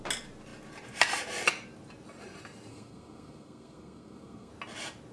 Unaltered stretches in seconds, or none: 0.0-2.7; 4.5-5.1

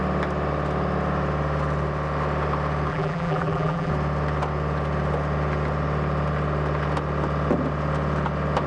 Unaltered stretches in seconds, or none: 0.0-2.9; 3.9-8.7

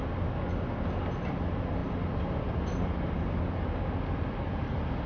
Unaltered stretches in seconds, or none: 0.0-5.1

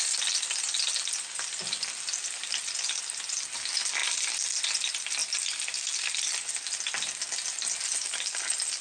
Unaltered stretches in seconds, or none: 0.0-8.8